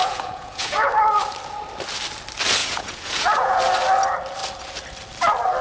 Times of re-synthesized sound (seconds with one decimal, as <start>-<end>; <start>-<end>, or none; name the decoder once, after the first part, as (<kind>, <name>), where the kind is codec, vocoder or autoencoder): 0.0-0.9 (vocoder, Vocos); 2.6-3.6